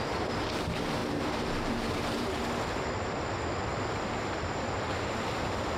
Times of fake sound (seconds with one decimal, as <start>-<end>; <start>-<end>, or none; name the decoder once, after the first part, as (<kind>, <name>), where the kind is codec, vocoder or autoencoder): 1.0-2.3 (vocoder, BigVGAN v2); 3.7-5.3

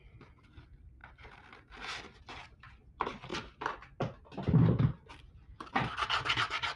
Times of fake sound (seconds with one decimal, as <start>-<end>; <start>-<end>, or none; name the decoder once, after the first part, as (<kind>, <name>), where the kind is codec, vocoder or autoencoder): 0.0-1.0 (vocoder, BigVGAN v2); 2.2-3.3; 4.8-6.8

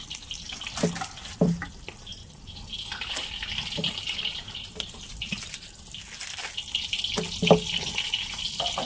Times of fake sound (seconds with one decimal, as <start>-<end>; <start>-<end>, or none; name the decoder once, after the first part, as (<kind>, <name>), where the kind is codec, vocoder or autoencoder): 2.1-6.0 (vocoder, BigVGAN v2)

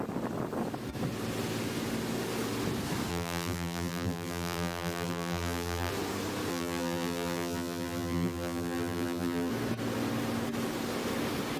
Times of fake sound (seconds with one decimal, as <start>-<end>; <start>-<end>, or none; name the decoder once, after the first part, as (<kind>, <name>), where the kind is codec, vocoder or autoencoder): 3.1-5.9 (vocoder, BigVGAN v2); 6.5-9.5

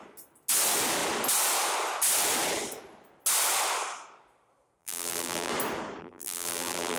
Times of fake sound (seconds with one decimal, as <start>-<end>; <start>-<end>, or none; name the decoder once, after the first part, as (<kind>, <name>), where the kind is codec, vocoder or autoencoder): 4.8-5.5 (vocoder, BigVGAN v2); 6.0-7.0